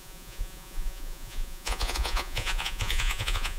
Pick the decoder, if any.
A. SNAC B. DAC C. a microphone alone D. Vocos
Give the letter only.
D